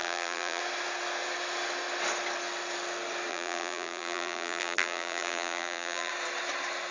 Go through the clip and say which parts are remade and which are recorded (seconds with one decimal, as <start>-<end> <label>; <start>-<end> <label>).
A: 0.0-0.6 remade; 0.6-3.3 recorded; 3.3-6.1 remade; 6.1-6.9 recorded

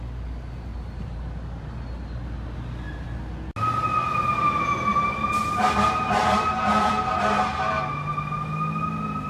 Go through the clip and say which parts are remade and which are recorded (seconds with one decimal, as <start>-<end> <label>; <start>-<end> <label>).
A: 0.0-0.7 recorded; 0.7-1.2 remade; 1.2-4.9 recorded; 4.9-6.9 remade; 6.9-9.3 recorded

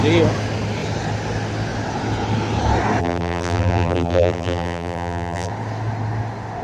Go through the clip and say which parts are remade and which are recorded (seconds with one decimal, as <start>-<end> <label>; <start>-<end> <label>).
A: 0.0-3.0 recorded; 3.0-5.5 remade; 5.5-6.6 recorded

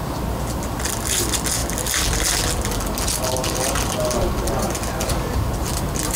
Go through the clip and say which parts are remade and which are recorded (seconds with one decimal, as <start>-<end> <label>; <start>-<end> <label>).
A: 0.0-6.2 recorded

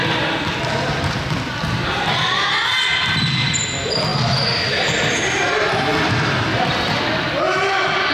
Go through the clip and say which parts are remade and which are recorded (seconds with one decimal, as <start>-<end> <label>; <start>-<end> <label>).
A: 0.0-5.9 recorded; 5.9-7.4 remade; 7.4-8.1 recorded

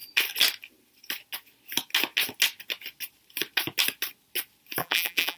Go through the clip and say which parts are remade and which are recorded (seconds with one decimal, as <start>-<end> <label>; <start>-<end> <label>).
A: 0.0-4.8 recorded; 4.8-5.4 remade

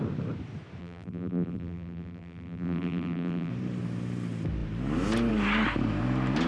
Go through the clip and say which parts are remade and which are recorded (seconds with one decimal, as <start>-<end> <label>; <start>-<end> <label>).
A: 0.0-0.8 recorded; 0.8-3.5 remade; 3.5-6.5 recorded